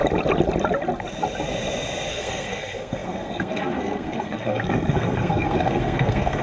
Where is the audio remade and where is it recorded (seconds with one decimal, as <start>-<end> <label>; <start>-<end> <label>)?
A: 0.0-2.1 recorded; 2.1-6.4 remade